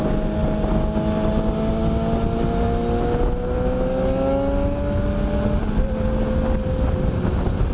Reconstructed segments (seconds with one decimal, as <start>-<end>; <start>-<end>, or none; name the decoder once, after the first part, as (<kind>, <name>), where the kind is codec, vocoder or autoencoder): none